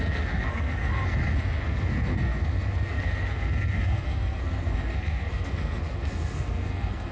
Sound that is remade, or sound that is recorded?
remade